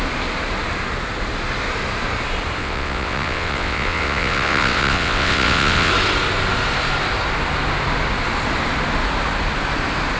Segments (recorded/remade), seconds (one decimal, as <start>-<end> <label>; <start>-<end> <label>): 0.0-2.6 recorded; 2.6-5.9 remade; 5.9-10.2 recorded